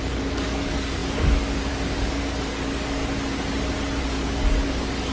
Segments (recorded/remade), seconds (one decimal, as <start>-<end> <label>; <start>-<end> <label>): 0.0-3.0 remade; 3.0-4.0 recorded; 4.0-5.1 remade